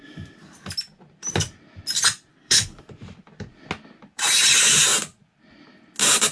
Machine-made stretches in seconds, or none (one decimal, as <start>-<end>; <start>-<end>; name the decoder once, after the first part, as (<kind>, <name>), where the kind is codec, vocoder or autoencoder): 2.3-2.8 (codec, HILCodec)